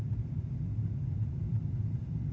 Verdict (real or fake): real